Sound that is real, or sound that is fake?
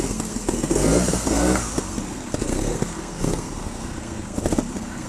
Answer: fake